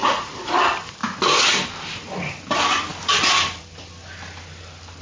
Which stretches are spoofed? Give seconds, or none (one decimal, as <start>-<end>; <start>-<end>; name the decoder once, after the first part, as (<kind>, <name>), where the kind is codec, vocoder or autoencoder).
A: 0.0-0.5 (vocoder, Vocos)